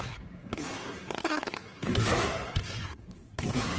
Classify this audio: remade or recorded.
remade